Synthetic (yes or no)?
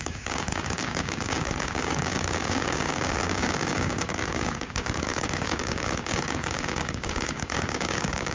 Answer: yes